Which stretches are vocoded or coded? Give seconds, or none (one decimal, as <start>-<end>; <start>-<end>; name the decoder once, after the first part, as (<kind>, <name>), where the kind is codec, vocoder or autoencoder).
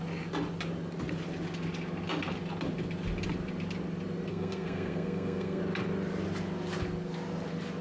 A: 4.3-5.6 (codec, SNAC)